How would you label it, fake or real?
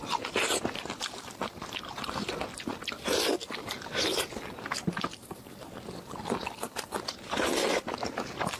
real